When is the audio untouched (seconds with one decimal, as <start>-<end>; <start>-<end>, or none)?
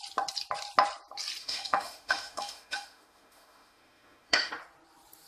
0.0-1.4; 4.5-5.3